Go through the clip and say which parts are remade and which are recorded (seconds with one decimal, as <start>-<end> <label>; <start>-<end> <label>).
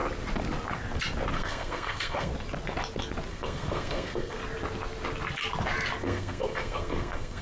0.0-1.3 recorded; 1.3-2.3 remade; 2.3-3.3 recorded; 3.3-4.4 remade; 4.4-6.0 recorded; 6.0-7.4 remade